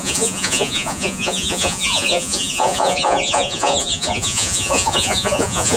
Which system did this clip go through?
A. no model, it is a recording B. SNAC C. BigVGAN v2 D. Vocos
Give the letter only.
D